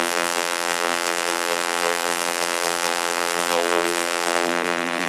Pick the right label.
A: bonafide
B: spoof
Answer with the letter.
B